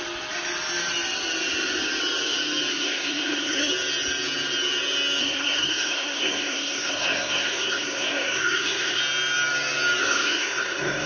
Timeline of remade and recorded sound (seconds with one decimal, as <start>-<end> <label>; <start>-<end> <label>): 0.0-2.7 recorded; 2.7-3.7 remade; 3.7-5.2 recorded; 5.2-9.0 remade; 9.0-10.0 recorded; 10.0-11.1 remade